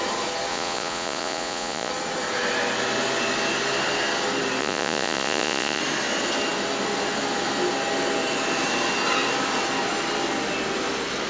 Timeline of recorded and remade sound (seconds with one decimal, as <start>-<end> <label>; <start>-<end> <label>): 0.0-0.5 recorded; 0.5-1.9 remade; 1.9-4.6 recorded; 4.6-5.8 remade; 5.8-11.3 recorded